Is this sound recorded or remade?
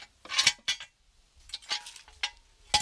recorded